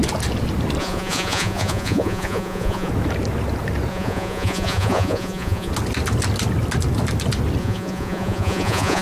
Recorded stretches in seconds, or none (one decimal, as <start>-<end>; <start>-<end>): 0.0-0.8; 2.9-3.9; 5.7-7.6